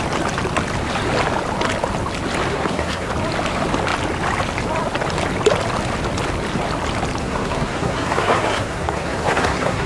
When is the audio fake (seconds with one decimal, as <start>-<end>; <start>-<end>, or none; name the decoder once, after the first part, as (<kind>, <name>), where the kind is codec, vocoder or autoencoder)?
2.5-3.1 (codec, SNAC); 7.2-9.9